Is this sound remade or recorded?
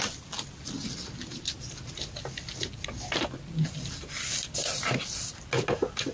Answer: recorded